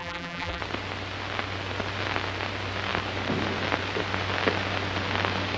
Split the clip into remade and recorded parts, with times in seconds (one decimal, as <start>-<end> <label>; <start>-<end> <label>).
0.0-0.6 remade; 0.6-5.6 recorded